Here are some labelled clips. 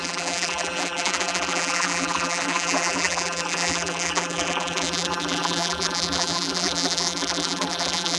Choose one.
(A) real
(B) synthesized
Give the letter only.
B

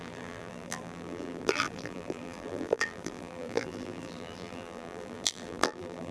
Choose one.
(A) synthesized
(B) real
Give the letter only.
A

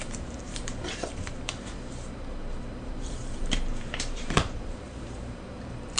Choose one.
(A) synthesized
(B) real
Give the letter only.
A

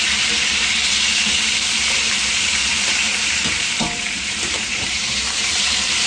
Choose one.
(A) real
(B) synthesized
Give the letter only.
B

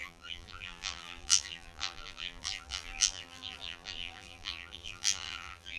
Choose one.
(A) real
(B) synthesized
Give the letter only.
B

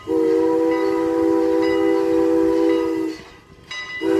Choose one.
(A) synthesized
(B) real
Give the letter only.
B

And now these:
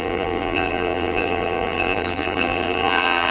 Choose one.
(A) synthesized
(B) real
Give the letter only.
A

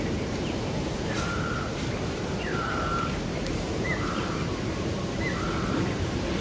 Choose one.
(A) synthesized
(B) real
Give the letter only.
A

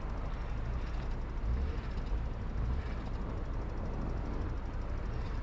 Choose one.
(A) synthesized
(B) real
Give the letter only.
B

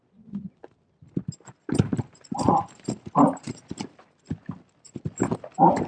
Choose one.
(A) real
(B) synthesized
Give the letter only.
A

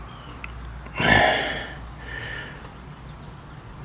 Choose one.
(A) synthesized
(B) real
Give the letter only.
B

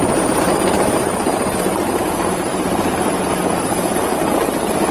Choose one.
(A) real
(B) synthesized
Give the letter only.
B